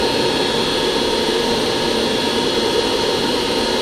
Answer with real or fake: real